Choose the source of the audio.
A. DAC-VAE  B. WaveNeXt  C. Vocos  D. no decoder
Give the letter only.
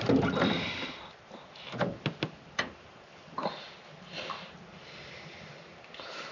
D